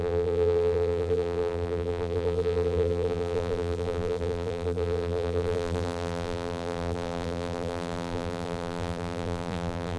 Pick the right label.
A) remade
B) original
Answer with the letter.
A